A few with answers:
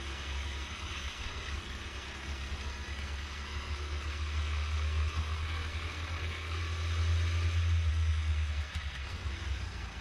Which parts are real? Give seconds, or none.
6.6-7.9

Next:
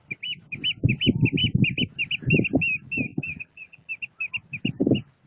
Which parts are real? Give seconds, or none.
0.0-3.1; 3.9-5.3

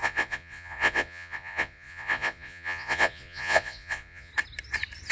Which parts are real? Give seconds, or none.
4.3-5.1

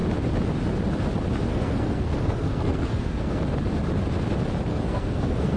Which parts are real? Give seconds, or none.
0.0-1.5; 3.4-4.7

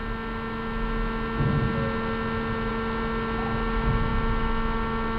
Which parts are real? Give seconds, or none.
0.0-5.2